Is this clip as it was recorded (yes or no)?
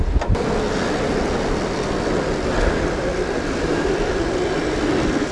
yes